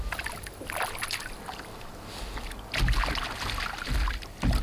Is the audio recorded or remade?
recorded